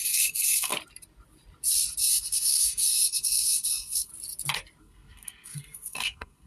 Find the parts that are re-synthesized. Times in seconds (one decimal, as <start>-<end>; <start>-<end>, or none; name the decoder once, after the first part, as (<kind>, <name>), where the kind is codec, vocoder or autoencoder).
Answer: 0.0-0.7 (codec, SNAC); 2.0-4.1; 4.8-6.5